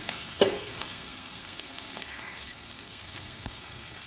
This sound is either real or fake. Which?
fake